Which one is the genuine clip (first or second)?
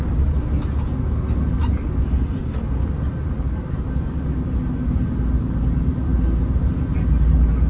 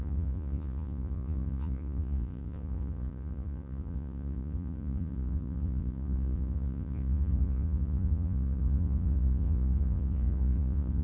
first